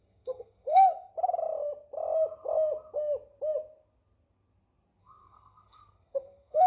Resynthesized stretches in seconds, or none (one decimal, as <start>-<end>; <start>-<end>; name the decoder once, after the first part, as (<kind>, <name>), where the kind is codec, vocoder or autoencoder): 0.0-1.1 (codec, SNAC); 5.0-6.7